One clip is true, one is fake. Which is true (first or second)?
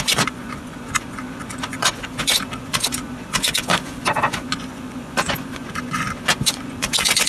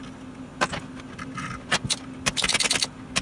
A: second